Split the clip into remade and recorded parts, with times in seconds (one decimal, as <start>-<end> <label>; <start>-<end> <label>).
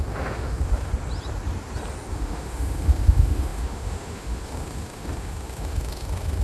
0.0-0.9 remade; 0.9-2.1 recorded; 2.1-6.4 remade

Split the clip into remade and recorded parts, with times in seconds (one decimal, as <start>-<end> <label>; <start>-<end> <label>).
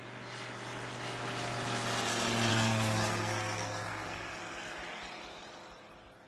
0.0-2.5 recorded; 2.5-4.4 remade; 4.4-6.3 recorded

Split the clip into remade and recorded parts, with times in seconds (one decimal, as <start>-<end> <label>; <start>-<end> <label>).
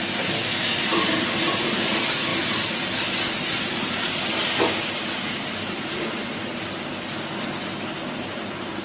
0.0-8.8 recorded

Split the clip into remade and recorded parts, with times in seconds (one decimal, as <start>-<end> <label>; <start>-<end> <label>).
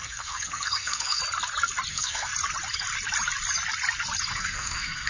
0.0-1.2 remade; 1.2-1.9 recorded; 1.9-2.3 remade; 2.3-4.3 recorded; 4.3-5.1 remade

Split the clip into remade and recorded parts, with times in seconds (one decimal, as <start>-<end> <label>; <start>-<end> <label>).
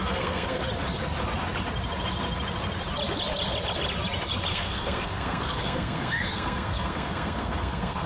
0.0-0.6 remade; 0.6-4.5 recorded; 4.5-8.1 remade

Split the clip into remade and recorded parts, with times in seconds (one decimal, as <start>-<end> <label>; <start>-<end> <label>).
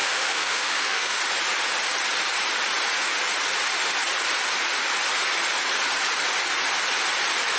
0.0-1.2 remade; 1.2-7.6 recorded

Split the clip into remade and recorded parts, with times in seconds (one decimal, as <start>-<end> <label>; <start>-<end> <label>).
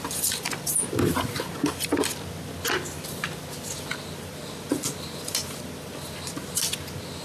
0.0-7.2 recorded